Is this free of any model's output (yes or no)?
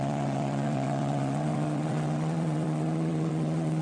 no